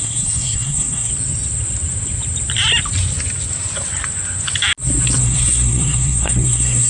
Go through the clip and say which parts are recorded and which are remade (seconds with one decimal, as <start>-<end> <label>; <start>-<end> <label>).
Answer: 0.0-1.1 remade; 1.1-5.2 recorded; 5.2-6.9 remade